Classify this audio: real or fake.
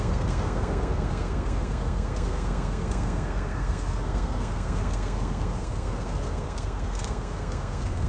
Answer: fake